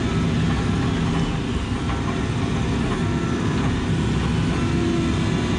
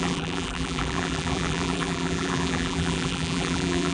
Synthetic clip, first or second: second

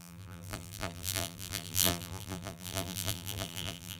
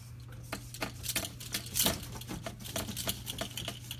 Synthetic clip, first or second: first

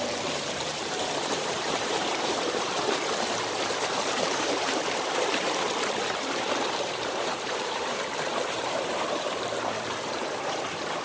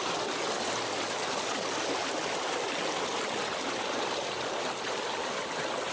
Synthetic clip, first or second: first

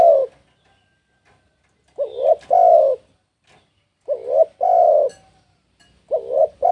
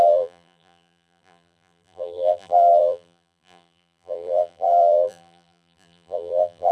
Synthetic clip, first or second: second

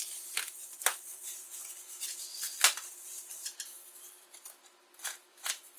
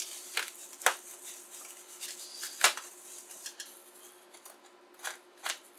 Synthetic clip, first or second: first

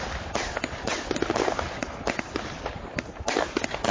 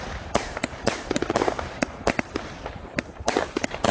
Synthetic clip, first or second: second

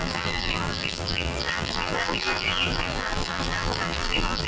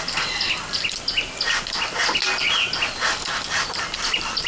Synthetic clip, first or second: first